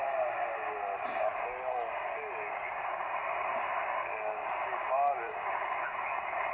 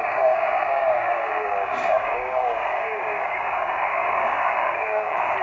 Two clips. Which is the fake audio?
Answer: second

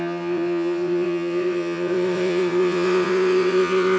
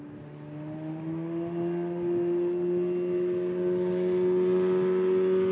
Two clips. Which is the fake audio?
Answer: first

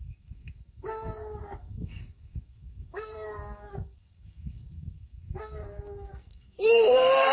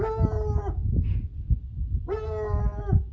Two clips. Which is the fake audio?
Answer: first